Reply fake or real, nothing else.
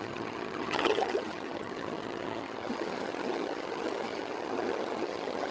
fake